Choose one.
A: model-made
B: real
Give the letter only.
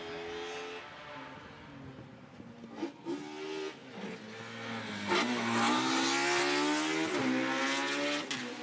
B